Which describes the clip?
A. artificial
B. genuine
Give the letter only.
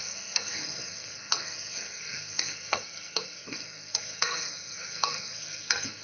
A